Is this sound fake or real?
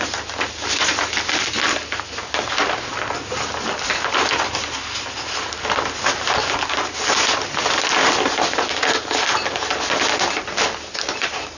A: real